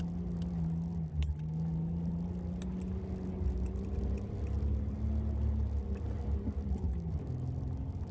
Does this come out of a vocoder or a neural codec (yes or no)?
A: no